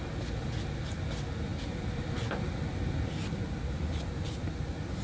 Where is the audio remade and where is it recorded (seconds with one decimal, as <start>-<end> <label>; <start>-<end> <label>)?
0.0-1.5 recorded; 1.5-4.5 remade; 4.5-5.0 recorded